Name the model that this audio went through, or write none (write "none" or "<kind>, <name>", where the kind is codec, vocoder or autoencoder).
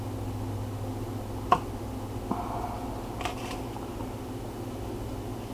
none